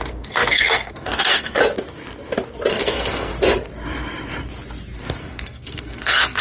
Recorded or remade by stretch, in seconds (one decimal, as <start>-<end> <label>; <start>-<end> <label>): 0.0-1.6 remade; 1.6-2.7 recorded; 2.7-3.3 remade; 3.3-5.2 recorded; 5.2-6.4 remade